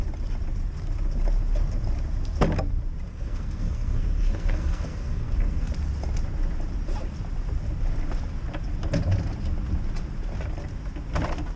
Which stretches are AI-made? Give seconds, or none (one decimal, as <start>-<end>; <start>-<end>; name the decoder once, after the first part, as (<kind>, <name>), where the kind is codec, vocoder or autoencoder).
3.1-5.7 (codec, SNAC)